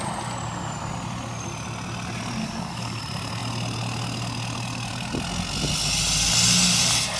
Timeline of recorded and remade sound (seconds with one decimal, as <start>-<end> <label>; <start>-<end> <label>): 0.0-2.4 recorded; 2.4-3.0 remade; 3.0-7.2 recorded